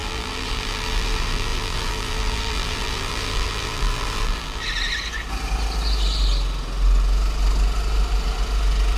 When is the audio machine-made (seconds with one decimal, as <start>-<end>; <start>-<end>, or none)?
0.0-4.6